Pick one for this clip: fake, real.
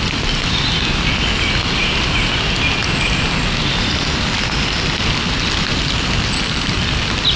real